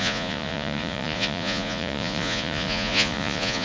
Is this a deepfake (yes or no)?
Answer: yes